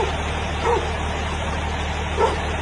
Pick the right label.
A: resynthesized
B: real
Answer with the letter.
B